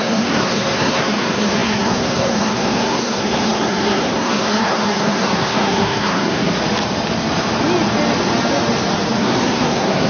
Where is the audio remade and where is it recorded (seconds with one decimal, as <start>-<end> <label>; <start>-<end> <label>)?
0.0-6.6 remade; 6.6-9.2 recorded; 9.2-10.1 remade